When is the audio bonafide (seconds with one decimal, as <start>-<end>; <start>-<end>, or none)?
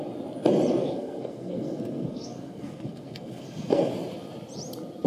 0.0-0.8; 3.9-5.1